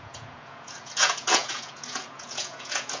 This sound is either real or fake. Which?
fake